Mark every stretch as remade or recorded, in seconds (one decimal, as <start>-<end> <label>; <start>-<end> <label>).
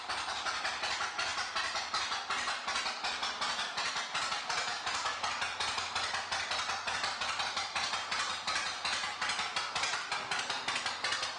0.0-11.4 recorded